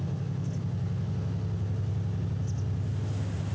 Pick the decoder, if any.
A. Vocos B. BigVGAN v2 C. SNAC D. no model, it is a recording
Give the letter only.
D